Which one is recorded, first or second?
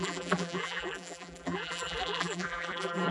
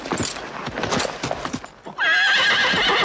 second